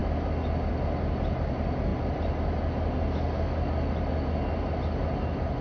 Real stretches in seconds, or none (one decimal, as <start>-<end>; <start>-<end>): 0.0-5.6